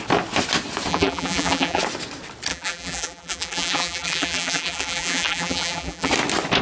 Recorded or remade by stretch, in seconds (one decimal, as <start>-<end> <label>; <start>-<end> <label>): 0.0-0.9 recorded; 0.9-1.8 remade; 1.8-2.5 recorded; 2.5-6.1 remade; 6.1-6.6 recorded